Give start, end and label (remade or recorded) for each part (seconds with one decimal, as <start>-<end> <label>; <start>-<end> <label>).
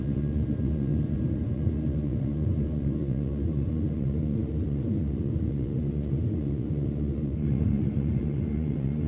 0.0-9.1 remade